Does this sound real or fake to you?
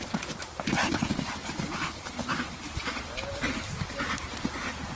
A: real